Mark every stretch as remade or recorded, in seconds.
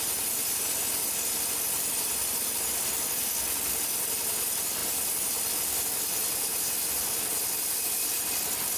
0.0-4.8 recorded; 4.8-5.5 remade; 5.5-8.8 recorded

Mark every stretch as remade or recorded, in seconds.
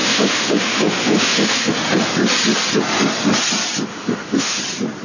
0.0-1.7 remade; 1.7-3.9 recorded; 3.9-4.6 remade; 4.6-5.0 recorded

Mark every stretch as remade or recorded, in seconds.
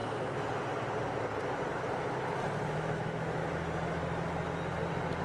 0.0-2.7 recorded; 2.7-3.4 remade; 3.4-5.2 recorded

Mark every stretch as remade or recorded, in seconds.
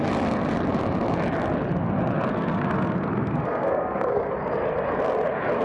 0.0-2.3 recorded; 2.3-4.3 remade; 4.3-5.6 recorded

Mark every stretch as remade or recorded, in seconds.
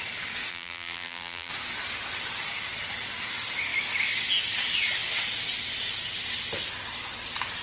0.0-0.5 recorded; 0.5-1.5 remade; 1.5-7.6 recorded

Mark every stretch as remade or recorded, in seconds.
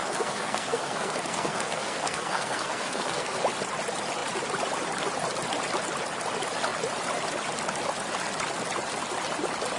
0.0-3.4 remade; 3.4-9.8 recorded